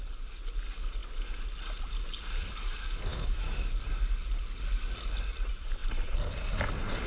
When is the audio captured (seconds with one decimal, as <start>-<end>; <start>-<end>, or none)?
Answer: 0.0-3.1; 3.7-7.1